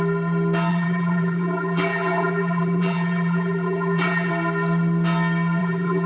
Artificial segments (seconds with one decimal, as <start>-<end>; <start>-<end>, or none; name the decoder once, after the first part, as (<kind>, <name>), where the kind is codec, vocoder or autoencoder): 0.7-4.3 (vocoder, BigVGAN v2); 5.6-6.1